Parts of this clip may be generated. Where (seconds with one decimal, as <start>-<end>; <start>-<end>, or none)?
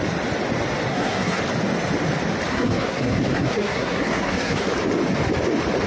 0.9-1.4; 2.5-4.7